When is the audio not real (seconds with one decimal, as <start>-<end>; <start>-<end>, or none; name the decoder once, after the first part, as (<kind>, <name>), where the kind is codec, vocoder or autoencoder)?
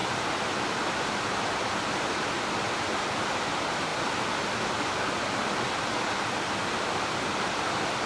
none